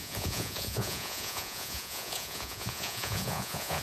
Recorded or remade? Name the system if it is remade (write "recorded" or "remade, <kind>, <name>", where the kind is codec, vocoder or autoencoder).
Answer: remade, vocoder, Vocos